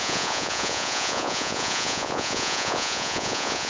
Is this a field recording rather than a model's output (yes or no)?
no